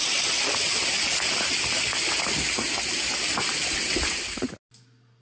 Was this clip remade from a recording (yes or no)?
no